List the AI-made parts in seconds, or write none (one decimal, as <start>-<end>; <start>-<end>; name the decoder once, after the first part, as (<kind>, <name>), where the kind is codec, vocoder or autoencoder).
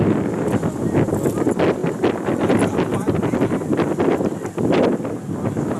none